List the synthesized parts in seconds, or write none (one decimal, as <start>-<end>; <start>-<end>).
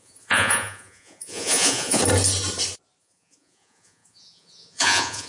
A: 0.0-2.0; 3.0-5.3